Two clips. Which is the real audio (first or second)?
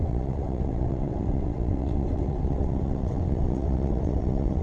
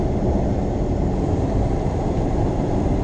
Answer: second